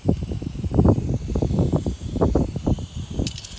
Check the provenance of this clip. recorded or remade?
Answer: remade